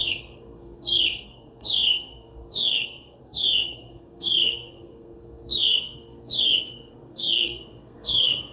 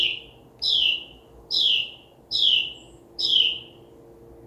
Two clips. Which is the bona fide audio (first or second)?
second